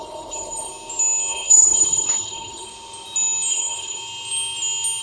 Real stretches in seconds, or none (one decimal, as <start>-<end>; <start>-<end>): 0.7-1.3; 2.7-3.5; 4.0-5.0